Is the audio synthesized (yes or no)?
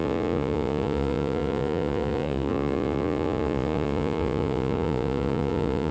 yes